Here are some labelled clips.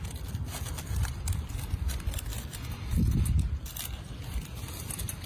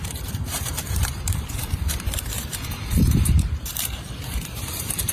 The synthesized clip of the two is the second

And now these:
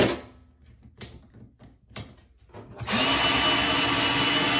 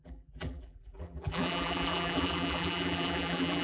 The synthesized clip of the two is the second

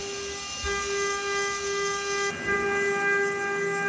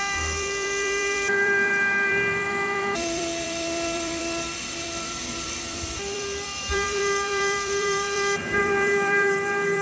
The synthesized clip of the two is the second